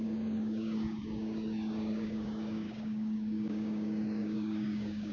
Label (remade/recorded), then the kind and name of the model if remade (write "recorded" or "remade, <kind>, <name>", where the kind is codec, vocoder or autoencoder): remade, codec, DAC